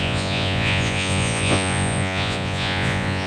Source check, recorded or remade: remade